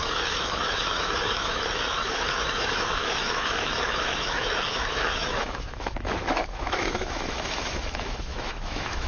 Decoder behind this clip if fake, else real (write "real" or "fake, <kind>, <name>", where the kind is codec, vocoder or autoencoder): fake, autoencoder, DAC-VAE